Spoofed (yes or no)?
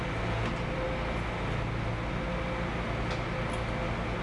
no